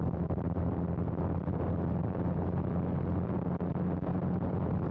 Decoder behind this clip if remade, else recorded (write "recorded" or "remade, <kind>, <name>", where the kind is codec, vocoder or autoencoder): recorded